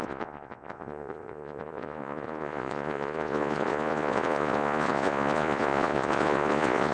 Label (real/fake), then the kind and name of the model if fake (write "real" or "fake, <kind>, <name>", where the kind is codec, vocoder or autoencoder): fake, vocoder, Vocos